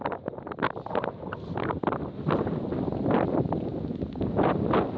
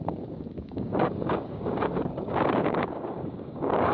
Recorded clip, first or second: first